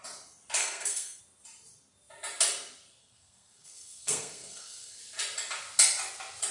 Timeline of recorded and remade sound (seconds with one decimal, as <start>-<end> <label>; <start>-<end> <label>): 0.0-0.6 recorded; 0.6-1.2 remade; 1.2-3.0 recorded; 3.0-5.0 remade; 5.0-6.5 recorded

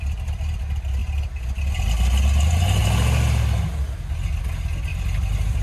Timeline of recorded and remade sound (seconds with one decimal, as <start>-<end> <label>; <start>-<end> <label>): 0.0-5.6 recorded

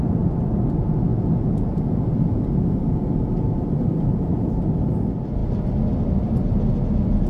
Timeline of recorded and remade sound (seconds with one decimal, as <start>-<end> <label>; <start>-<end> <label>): 0.0-1.1 recorded; 1.1-3.3 remade; 3.3-3.9 recorded; 3.9-4.5 remade; 4.5-7.3 recorded

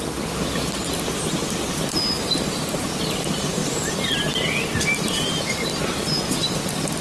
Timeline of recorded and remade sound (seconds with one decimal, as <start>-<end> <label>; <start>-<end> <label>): 0.0-7.0 recorded

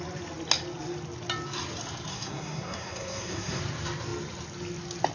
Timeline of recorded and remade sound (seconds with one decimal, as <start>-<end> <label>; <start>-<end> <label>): 0.0-2.1 recorded; 2.1-3.6 remade; 3.6-5.1 recorded